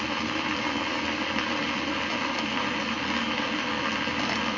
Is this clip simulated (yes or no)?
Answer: no